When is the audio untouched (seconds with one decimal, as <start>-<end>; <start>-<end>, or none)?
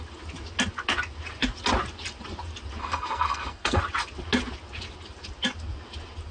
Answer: 0.0-2.8; 3.8-6.3